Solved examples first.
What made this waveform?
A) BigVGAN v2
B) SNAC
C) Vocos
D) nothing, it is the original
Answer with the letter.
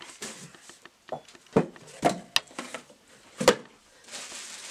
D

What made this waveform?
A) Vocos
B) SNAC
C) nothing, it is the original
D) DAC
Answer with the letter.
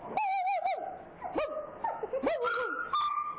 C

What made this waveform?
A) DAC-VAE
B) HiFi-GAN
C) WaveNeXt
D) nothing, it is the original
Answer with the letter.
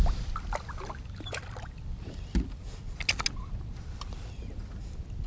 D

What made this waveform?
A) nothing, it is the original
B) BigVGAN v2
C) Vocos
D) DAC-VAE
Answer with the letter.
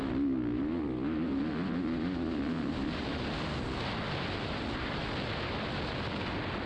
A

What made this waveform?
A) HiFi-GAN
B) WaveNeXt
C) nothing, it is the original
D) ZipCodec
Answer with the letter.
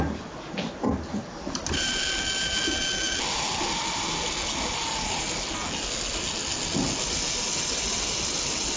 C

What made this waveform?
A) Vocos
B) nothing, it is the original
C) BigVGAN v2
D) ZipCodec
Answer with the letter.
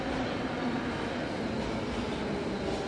B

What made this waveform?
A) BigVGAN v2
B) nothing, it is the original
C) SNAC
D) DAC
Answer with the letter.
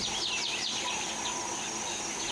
B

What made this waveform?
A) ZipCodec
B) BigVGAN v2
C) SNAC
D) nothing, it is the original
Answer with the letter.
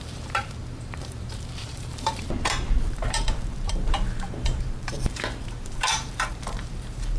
B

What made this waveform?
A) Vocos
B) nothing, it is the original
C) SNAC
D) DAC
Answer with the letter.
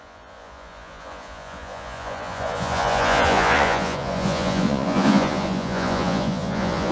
A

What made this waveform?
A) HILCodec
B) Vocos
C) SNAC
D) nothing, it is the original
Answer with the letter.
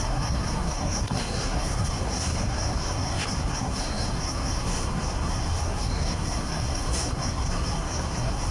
C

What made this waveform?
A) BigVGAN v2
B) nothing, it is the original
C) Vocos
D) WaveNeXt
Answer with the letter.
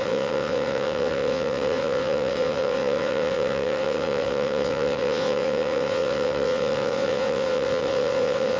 D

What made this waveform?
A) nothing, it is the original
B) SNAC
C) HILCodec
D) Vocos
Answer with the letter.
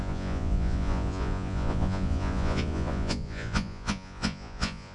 D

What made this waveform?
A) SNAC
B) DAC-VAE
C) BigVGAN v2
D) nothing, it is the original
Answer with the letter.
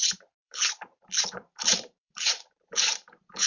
C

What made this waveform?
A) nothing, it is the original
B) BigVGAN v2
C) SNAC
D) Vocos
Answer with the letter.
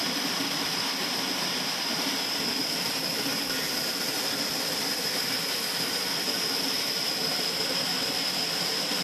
B